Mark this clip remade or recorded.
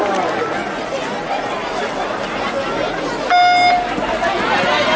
recorded